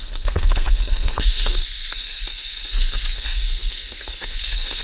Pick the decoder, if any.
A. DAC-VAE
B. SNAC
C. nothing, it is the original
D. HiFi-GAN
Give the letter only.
B